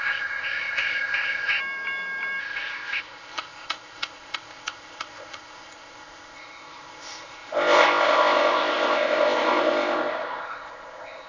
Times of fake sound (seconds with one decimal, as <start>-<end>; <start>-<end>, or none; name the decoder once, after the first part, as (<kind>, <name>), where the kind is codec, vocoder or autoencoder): 0.0-1.6 (codec, ZipCodec); 2.4-11.3